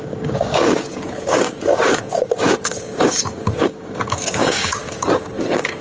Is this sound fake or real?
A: fake